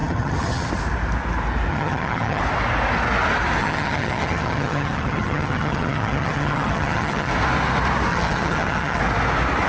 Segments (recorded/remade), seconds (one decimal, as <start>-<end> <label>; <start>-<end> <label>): 0.0-0.7 remade; 0.7-1.7 recorded; 1.7-2.4 remade; 2.4-3.6 recorded; 3.6-7.3 remade; 7.3-8.1 recorded; 8.1-9.0 remade; 9.0-9.7 recorded